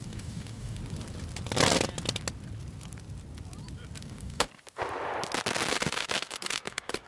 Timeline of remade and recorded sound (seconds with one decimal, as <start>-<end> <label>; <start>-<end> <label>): 0.0-0.8 remade; 0.8-4.0 recorded; 4.0-4.5 remade; 4.5-5.7 recorded; 5.7-7.1 remade